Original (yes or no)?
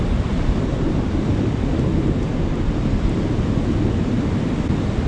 yes